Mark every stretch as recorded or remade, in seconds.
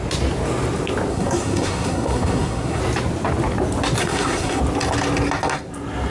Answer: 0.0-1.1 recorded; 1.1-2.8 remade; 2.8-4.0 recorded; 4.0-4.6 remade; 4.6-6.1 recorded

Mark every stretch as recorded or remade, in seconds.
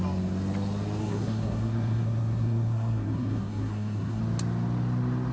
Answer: 0.0-1.0 recorded; 1.0-4.2 remade; 4.2-5.3 recorded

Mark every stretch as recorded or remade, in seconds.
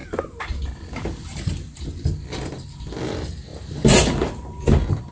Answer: 0.0-3.0 remade; 3.0-3.5 recorded; 3.5-5.1 remade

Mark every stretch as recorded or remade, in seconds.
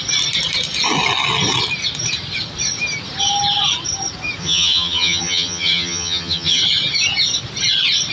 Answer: 0.0-4.4 recorded; 4.4-6.6 remade; 6.6-8.1 recorded